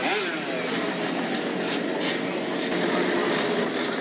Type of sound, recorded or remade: recorded